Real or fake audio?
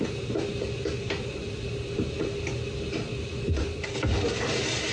real